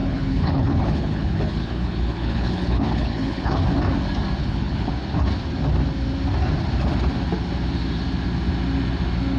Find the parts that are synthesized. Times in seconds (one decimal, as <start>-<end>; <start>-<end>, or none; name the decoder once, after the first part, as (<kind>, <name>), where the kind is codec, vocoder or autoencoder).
0.0-3.6 (codec, HILCodec); 4.4-4.9